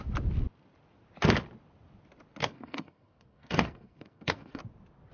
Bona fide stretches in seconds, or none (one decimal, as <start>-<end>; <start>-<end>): 0.0-2.4; 4.6-5.1